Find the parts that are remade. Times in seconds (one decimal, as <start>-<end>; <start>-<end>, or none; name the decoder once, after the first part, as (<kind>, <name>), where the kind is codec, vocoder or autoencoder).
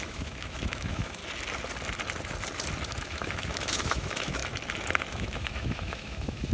0.0-1.2 (autoencoder, DAC-VAE); 2.9-4.4; 5.1-6.5